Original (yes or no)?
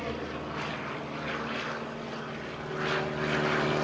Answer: yes